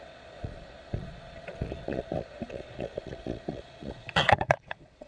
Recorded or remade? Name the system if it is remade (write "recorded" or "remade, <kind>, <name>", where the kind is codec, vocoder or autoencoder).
remade, vocoder, Vocos